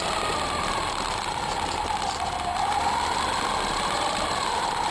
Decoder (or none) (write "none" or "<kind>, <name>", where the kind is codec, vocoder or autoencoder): none